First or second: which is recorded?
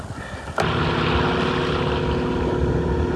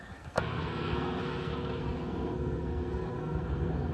first